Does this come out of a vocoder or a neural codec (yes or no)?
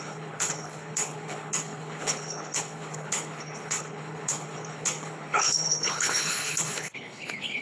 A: yes